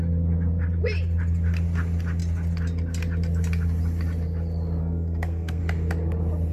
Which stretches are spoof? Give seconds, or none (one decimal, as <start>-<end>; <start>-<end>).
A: 4.8-5.6